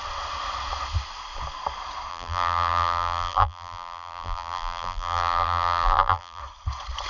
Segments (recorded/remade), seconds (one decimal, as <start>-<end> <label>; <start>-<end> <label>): 0.0-2.1 recorded; 2.1-6.4 remade; 6.4-7.1 recorded